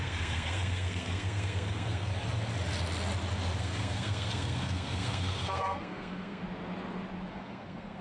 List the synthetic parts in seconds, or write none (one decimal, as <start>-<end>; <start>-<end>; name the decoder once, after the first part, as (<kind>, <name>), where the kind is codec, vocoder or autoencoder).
0.0-2.1 (codec, SNAC); 3.6-6.4; 7.3-8.0